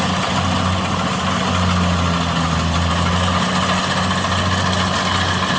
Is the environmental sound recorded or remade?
recorded